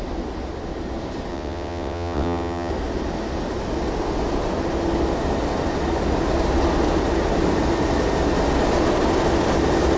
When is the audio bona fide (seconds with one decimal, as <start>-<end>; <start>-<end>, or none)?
0.0-1.3; 2.7-10.0